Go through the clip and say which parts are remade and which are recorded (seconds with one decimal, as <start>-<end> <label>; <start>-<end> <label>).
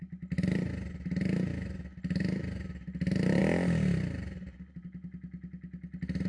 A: 0.0-6.3 recorded